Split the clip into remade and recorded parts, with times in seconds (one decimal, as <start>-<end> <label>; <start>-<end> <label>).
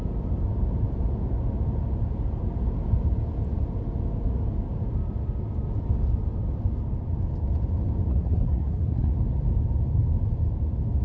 0.0-8.1 recorded; 8.1-9.1 remade; 9.1-11.0 recorded